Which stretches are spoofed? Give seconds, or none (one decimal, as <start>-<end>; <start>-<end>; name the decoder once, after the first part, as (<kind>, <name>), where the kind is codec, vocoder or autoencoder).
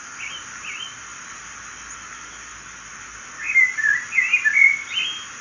none